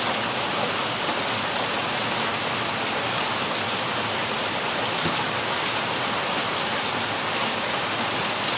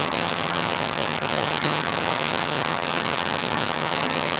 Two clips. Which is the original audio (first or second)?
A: first